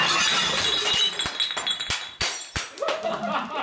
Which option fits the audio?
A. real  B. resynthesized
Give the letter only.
A